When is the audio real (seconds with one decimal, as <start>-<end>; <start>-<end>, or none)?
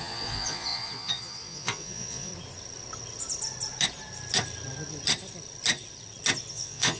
2.3-6.5